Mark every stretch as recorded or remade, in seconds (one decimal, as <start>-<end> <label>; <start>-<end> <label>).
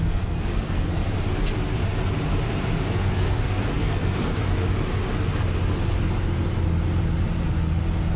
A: 0.0-1.0 remade; 1.0-2.8 recorded; 2.8-4.3 remade; 4.3-8.2 recorded